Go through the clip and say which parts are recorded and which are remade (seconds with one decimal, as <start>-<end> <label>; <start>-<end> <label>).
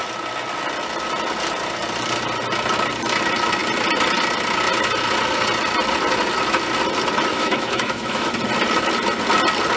0.0-7.3 recorded; 7.3-8.3 remade; 8.3-9.8 recorded